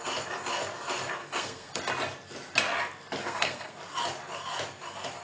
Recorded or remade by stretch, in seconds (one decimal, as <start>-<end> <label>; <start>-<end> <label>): 0.0-1.2 recorded; 1.2-1.8 remade; 1.8-3.2 recorded; 3.2-3.8 remade; 3.8-5.2 recorded